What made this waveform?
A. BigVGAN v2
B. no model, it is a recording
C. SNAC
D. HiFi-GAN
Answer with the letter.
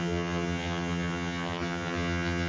D